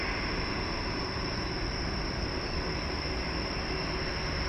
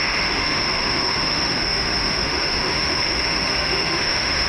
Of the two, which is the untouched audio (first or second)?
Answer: first